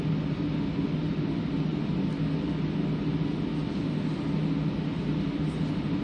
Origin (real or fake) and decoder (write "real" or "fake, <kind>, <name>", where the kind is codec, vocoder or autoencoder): real